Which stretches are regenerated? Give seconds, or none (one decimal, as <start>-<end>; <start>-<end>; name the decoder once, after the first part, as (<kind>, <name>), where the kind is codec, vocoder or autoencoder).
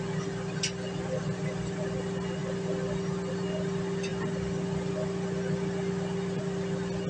none